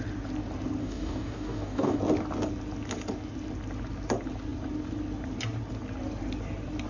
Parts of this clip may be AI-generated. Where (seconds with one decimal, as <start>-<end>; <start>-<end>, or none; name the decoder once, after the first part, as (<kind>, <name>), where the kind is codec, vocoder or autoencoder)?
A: 0.8-2.0 (codec, DAC)